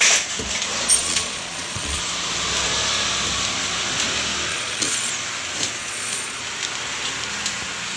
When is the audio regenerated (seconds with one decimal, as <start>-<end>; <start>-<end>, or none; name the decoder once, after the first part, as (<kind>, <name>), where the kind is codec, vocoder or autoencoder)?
1.0-2.0 (vocoder, Vocos); 4.5-5.1; 5.8-6.4